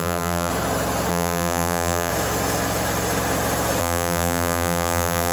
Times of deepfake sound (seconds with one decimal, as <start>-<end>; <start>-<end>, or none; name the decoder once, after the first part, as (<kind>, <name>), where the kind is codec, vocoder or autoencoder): 0.0-0.5 (vocoder, BigVGAN v2); 1.1-2.1; 3.8-5.3